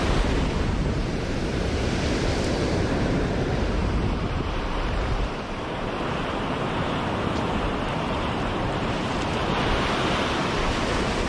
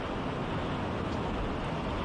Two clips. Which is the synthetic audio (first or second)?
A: first